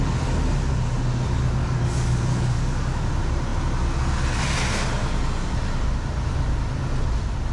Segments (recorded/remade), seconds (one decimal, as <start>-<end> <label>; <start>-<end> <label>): 0.0-1.6 recorded; 1.6-3.1 remade; 3.1-7.5 recorded